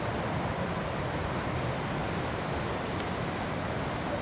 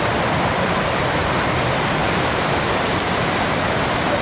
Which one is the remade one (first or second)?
second